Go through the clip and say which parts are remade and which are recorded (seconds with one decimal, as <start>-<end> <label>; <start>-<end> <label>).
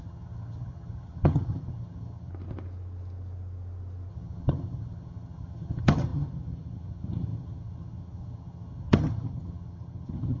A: 0.0-2.3 remade; 2.3-4.1 recorded; 4.1-10.4 remade